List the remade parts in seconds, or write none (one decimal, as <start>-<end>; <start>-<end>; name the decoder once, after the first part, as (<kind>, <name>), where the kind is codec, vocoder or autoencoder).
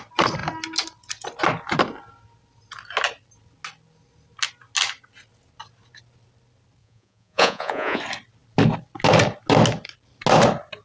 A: 6.8-8.0 (vocoder, Vocos)